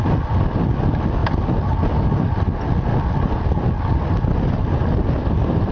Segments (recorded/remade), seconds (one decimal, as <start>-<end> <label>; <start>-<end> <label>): 0.0-5.7 recorded